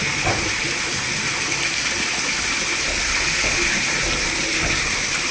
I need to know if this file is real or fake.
real